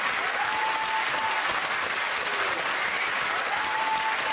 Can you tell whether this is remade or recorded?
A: recorded